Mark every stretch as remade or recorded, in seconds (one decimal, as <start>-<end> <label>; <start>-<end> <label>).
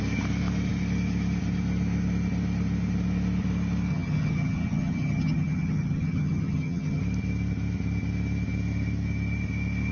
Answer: 0.0-3.9 recorded; 3.9-7.0 remade; 7.0-9.9 recorded